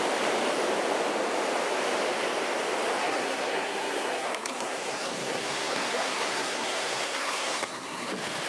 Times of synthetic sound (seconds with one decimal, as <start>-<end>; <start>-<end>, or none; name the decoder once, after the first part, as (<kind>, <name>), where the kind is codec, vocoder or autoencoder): 3.0-8.1 (codec, SNAC)